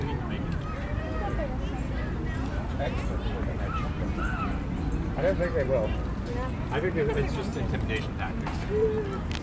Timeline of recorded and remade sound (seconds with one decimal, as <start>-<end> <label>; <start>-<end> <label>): 0.0-9.4 recorded

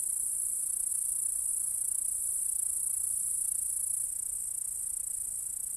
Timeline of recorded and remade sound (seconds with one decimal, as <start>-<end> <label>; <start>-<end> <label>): 0.0-5.8 recorded

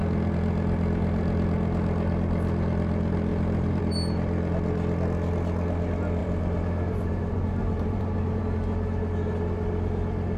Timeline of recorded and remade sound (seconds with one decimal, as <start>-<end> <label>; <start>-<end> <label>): 0.0-3.3 recorded; 3.3-3.8 remade; 3.8-6.2 recorded; 6.2-8.4 remade; 8.4-10.4 recorded

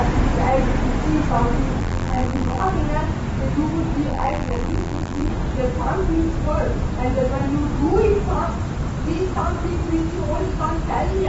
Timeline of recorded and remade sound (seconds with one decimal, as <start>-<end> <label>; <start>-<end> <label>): 0.0-1.8 recorded; 1.8-2.7 remade; 2.7-4.1 recorded; 4.1-5.3 remade; 5.3-11.3 recorded

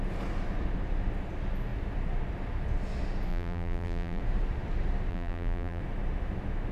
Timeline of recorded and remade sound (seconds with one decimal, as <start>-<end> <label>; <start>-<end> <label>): 0.0-3.3 recorded; 3.3-4.2 remade; 4.2-5.1 recorded; 5.1-5.8 remade; 5.8-6.7 recorded